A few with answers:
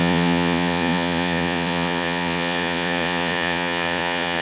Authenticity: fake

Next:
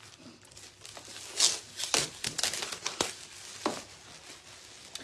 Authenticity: real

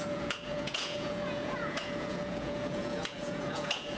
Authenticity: fake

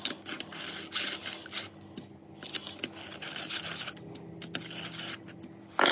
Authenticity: real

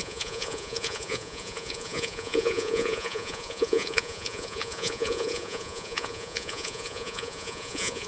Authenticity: fake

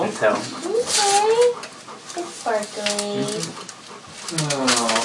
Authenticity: real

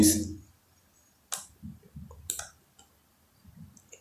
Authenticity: real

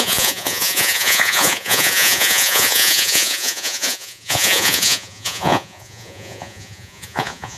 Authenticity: fake